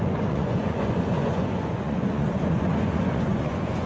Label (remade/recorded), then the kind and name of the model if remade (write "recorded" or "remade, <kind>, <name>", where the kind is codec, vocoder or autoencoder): remade, vocoder, Vocos